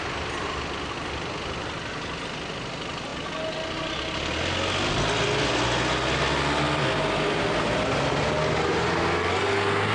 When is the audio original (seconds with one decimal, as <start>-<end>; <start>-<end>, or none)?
0.0-9.9